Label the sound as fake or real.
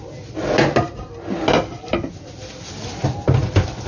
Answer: real